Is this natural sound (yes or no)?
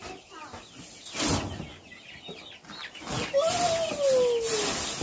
yes